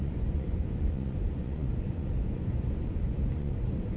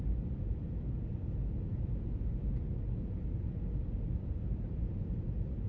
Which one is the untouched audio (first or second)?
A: second